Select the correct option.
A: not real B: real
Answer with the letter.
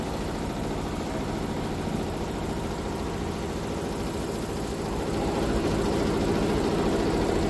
B